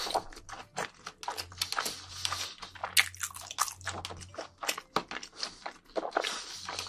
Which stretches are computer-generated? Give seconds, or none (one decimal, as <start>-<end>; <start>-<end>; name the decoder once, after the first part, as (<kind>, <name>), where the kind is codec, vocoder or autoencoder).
none

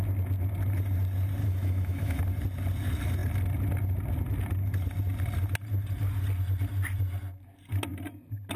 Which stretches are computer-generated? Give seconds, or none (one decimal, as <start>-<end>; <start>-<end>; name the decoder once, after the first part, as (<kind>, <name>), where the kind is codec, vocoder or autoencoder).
1.4-2.2 (autoencoder, DAC-VAE)

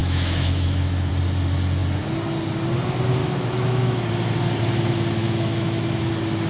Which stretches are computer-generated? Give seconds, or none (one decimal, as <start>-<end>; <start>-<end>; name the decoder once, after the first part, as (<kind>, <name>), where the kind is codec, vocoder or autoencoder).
0.0-1.1 (autoencoder, DAC-VAE); 3.2-4.0; 5.2-6.1

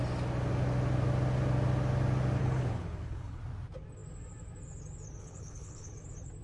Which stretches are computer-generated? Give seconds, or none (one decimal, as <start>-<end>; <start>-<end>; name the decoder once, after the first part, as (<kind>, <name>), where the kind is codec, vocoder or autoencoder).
2.4-3.4 (codec, HILCodec); 5.2-5.9

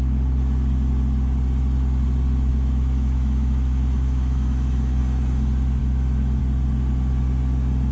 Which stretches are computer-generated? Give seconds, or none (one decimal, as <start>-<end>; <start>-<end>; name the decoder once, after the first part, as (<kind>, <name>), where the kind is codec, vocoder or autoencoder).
2.5-5.0 (autoencoder, DAC-VAE); 5.8-6.4

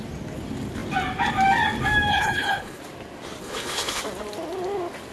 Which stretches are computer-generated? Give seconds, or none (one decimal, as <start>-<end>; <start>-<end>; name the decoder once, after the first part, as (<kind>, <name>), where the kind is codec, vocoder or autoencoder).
2.1-2.8 (codec, HILCodec); 3.4-4.0

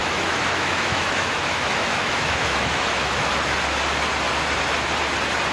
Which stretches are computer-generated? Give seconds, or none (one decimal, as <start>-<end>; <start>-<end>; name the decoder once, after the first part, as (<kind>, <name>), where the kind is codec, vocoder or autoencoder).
0.0-3.3 (autoencoder, DAC-VAE)